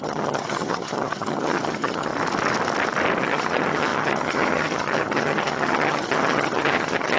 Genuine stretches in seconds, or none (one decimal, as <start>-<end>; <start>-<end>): 2.1-3.2

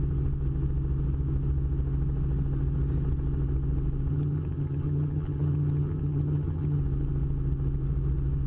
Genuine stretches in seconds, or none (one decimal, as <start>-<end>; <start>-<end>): 0.0-4.1; 6.8-8.5

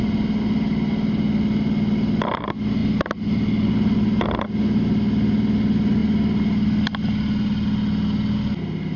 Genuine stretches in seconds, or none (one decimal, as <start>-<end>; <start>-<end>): 0.0-9.0